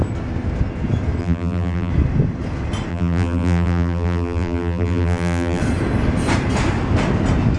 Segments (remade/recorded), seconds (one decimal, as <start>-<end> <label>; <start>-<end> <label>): 0.0-1.2 recorded; 1.2-1.9 remade; 1.9-2.9 recorded; 2.9-5.6 remade; 5.6-7.6 recorded